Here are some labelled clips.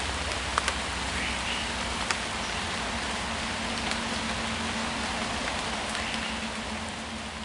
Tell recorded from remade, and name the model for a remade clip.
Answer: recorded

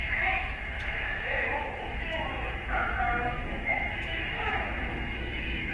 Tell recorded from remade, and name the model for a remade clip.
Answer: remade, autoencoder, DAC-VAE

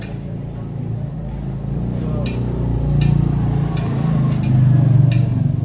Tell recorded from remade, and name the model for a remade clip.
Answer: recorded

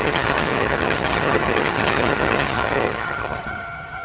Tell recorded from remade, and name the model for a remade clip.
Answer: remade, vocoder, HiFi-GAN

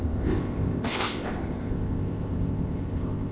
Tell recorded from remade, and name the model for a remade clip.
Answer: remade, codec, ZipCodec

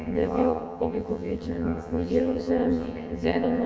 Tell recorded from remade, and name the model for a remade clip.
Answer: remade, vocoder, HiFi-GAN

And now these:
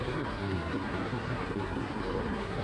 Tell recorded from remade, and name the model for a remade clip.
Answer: remade, codec, SNAC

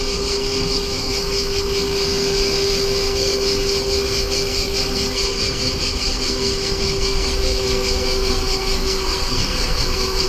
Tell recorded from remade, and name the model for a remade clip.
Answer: remade, codec, SNAC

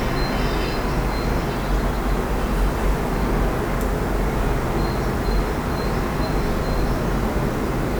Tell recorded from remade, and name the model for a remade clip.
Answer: recorded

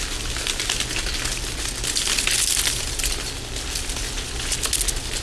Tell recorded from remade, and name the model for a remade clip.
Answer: recorded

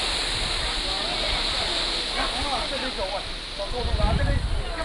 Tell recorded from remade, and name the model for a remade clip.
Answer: recorded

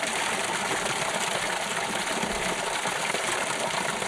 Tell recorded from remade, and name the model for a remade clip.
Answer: recorded